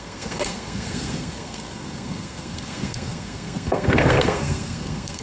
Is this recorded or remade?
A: remade